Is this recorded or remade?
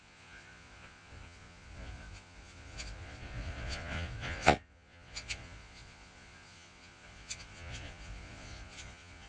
remade